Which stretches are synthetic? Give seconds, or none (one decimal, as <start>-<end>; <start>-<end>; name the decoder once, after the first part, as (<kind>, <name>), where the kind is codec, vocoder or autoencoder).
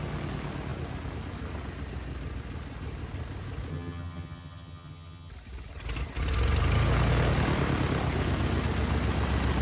3.7-5.3 (vocoder, HiFi-GAN)